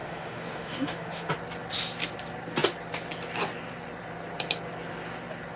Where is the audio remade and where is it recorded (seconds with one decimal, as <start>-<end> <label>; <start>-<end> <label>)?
0.0-1.3 remade; 1.3-5.6 recorded